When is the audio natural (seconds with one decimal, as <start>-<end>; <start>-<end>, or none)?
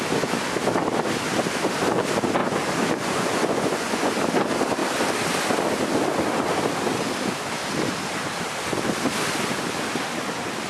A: 0.0-2.4; 4.1-10.7